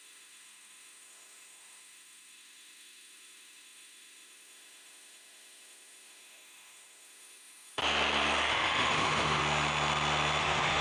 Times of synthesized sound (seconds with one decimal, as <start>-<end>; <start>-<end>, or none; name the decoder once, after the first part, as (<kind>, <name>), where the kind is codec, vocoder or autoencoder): 0.0-7.8 (autoencoder, DAC-VAE); 8.5-9.4; 10.4-10.8